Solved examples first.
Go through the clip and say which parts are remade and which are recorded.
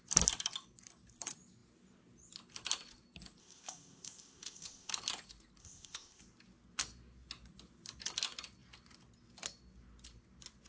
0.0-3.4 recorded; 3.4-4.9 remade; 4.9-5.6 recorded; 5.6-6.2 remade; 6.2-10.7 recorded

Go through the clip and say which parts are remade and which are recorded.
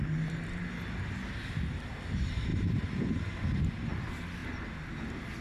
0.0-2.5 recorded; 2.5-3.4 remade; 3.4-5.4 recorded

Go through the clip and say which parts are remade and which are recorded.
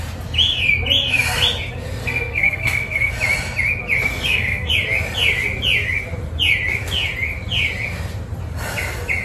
0.0-2.0 recorded; 2.0-3.1 remade; 3.1-4.1 recorded; 4.1-4.7 remade; 4.7-9.2 recorded